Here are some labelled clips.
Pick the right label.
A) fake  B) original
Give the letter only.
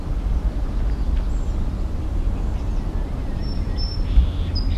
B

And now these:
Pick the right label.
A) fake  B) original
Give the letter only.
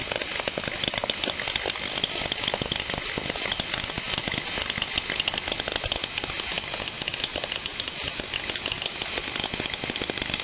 B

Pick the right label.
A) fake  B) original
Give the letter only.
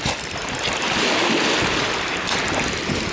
B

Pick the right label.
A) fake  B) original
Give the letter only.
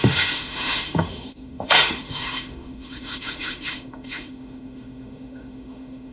A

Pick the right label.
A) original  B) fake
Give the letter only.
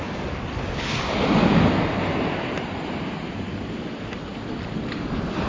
A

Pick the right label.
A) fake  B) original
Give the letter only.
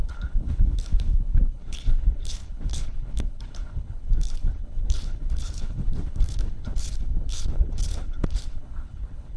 A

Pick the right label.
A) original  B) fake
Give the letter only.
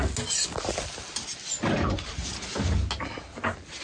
A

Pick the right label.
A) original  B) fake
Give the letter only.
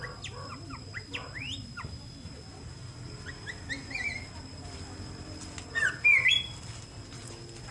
A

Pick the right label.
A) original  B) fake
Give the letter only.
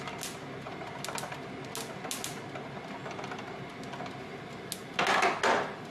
A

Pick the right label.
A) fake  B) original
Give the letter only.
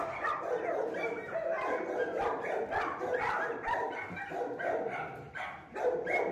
B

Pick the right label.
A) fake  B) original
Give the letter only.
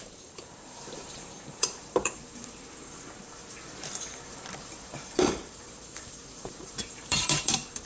A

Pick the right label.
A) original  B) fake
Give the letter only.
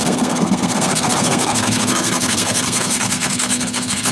B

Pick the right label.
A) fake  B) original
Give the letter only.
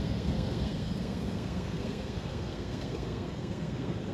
A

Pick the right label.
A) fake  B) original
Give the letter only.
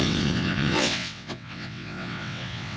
A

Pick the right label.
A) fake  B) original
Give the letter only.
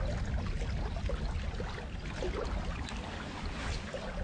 B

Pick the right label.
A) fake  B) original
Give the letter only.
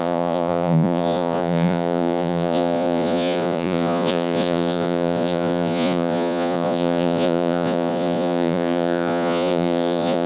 A